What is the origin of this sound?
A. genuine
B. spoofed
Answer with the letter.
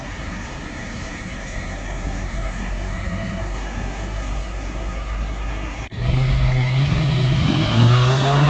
B